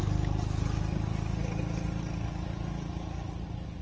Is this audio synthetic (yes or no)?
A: no